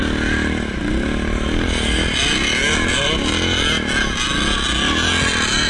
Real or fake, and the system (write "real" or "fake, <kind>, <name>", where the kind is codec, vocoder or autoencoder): real